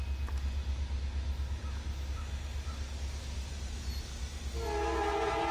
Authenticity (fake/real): real